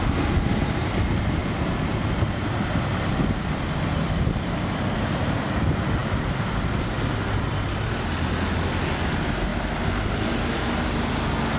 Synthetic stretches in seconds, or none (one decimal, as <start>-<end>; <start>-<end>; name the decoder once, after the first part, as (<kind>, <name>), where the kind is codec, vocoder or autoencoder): none